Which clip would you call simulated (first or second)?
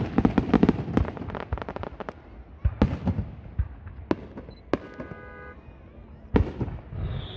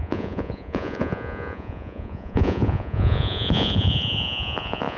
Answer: second